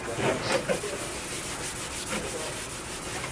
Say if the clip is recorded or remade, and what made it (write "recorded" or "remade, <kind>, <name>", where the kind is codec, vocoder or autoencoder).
recorded